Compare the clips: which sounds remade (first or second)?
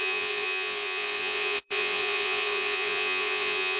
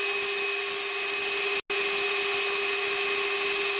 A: first